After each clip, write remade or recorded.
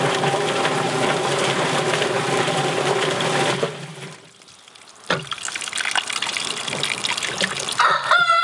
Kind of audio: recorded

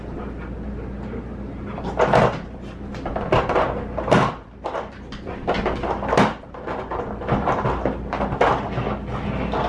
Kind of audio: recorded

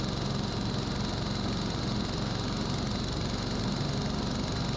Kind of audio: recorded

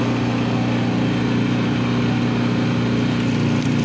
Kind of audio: recorded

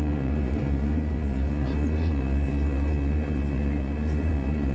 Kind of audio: remade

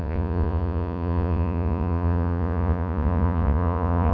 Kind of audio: remade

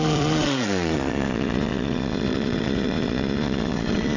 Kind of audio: remade